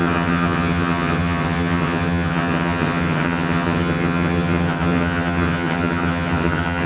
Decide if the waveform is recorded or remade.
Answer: remade